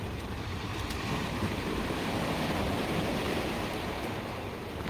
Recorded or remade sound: remade